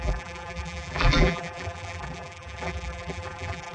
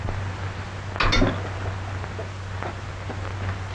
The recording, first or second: second